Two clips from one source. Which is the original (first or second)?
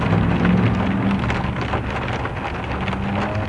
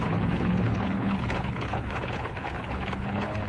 first